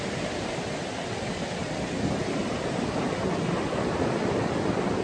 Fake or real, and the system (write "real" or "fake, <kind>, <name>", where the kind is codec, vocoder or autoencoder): real